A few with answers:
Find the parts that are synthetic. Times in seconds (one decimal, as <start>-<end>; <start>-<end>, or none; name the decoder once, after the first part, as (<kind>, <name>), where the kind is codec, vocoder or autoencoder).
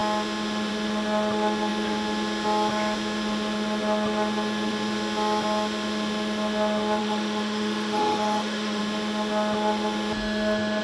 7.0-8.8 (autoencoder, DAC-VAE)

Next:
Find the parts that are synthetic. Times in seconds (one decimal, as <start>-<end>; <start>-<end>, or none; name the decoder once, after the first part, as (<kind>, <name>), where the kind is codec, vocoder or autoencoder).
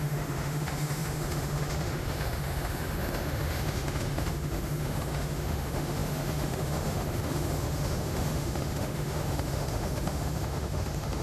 0.0-11.2 (autoencoder, DAC-VAE)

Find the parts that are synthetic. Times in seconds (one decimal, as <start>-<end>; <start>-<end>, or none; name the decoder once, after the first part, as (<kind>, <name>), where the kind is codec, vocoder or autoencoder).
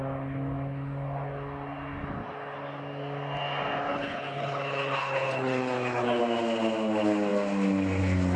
3.9-6.2 (codec, HILCodec)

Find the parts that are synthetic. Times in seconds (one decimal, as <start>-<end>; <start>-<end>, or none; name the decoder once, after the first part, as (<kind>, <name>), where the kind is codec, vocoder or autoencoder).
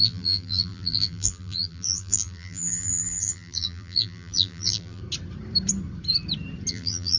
0.0-5.0 (vocoder, BigVGAN v2); 6.7-7.2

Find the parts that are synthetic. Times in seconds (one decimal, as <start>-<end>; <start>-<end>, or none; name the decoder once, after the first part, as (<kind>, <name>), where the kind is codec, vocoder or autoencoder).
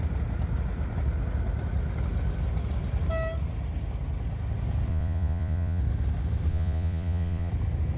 4.9-5.8 (vocoder, Vocos); 6.5-7.5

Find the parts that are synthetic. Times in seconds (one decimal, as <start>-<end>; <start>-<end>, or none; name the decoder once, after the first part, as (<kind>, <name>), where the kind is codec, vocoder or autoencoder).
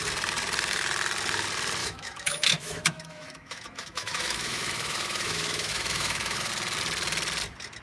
1.8-6.5 (autoencoder, DAC-VAE)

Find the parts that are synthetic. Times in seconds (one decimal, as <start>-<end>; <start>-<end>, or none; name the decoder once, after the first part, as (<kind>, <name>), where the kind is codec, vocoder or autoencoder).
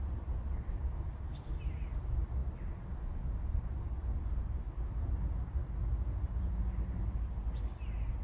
0.0-5.8 (vocoder, BigVGAN v2)